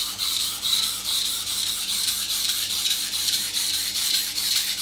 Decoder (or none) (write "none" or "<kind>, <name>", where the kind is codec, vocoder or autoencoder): vocoder, BigVGAN v2